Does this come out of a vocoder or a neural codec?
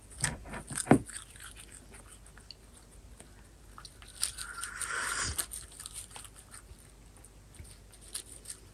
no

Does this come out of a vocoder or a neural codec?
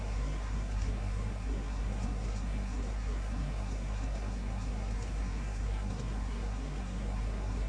yes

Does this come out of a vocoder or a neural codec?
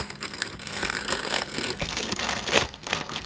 yes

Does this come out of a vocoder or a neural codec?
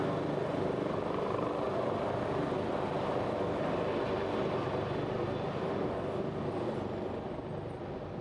no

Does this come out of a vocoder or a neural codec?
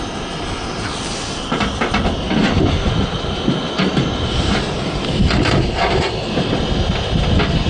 no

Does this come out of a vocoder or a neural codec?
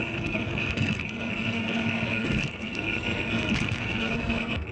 yes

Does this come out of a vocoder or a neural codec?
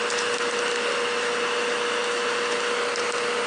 no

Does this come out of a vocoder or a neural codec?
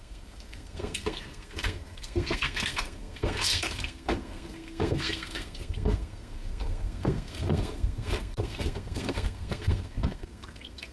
yes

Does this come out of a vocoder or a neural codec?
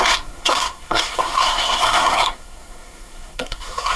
yes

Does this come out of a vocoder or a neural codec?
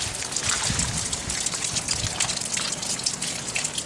no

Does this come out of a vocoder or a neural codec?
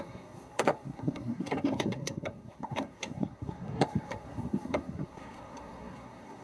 yes